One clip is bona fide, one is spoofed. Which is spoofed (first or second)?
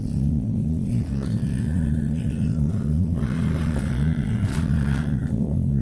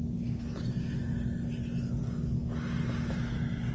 first